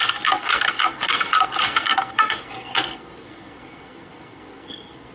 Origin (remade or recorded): remade